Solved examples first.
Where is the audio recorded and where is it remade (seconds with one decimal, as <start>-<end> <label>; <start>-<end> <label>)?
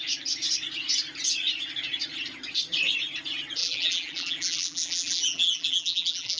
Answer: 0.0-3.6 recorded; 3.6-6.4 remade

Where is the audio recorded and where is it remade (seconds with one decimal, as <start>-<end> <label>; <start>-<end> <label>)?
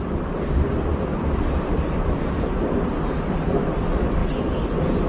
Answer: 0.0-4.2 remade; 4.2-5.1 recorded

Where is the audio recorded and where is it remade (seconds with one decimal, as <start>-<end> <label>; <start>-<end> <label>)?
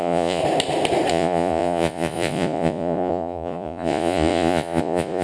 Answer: 0.0-0.4 remade; 0.4-1.1 recorded; 1.1-5.2 remade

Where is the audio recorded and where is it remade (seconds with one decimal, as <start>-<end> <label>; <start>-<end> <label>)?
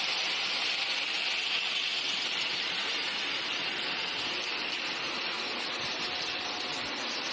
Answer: 0.0-1.9 recorded; 1.9-3.4 remade; 3.4-7.3 recorded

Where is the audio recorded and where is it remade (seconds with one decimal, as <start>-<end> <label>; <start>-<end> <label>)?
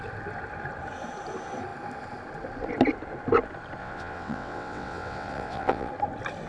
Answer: 0.0-3.8 recorded; 3.8-5.9 remade; 5.9-6.5 recorded